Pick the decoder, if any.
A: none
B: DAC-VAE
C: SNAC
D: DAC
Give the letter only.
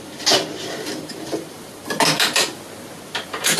A